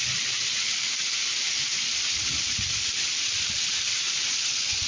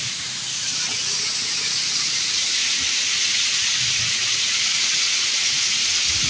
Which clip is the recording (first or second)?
first